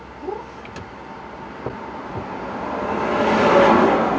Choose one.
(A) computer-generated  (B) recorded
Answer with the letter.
B